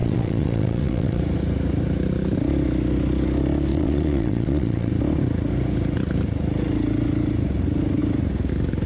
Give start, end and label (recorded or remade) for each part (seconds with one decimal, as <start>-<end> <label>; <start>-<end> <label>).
0.0-1.2 remade; 1.2-3.7 recorded; 3.7-4.9 remade; 4.9-8.9 recorded